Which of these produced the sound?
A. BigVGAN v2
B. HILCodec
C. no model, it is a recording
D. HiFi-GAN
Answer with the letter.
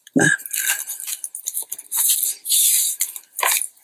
A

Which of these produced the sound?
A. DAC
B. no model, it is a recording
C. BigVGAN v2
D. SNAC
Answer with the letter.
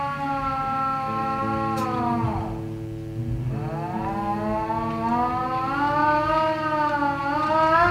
B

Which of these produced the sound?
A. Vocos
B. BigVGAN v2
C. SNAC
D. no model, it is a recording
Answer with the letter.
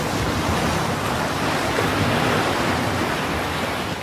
D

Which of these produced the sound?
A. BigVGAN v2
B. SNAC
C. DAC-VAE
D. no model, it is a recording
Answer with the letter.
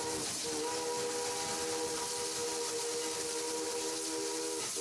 D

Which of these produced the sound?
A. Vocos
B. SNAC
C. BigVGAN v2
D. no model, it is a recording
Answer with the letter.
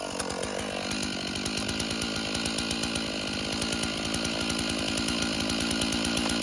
D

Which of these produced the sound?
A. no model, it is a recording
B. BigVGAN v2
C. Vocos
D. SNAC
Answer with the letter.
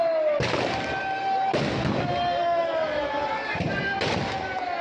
A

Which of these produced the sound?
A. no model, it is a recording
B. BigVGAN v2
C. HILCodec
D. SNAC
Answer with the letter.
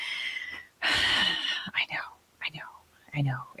A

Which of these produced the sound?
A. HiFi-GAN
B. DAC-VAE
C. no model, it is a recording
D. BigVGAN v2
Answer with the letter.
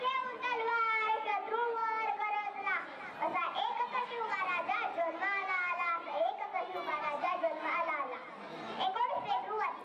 C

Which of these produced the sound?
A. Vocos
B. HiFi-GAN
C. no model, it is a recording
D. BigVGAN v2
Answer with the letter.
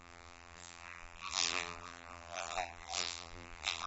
D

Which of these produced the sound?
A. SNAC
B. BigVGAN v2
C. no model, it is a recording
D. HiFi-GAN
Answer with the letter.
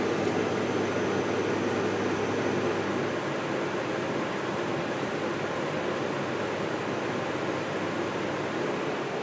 C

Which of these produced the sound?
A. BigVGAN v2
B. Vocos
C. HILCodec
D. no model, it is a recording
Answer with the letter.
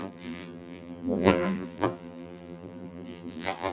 A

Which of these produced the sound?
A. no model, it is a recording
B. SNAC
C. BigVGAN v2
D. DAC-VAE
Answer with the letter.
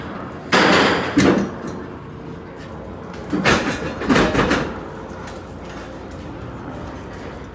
A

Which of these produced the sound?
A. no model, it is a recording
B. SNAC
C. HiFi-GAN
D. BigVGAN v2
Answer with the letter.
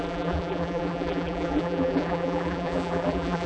D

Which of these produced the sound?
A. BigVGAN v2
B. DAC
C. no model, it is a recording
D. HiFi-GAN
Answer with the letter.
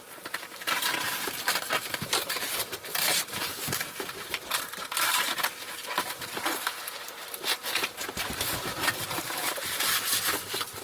A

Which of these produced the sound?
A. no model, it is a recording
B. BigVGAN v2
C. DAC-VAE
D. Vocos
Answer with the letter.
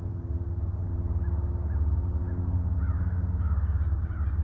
A